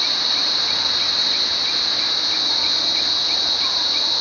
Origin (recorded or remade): recorded